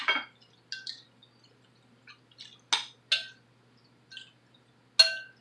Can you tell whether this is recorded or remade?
recorded